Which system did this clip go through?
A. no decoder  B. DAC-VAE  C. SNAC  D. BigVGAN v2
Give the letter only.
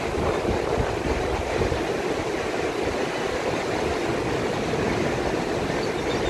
A